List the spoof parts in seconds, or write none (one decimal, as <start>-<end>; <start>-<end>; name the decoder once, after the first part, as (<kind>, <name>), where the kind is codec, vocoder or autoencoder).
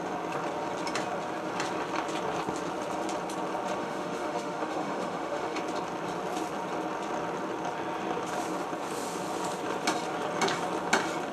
3.8-5.6 (autoencoder, DAC-VAE)